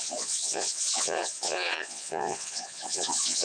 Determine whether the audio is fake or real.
fake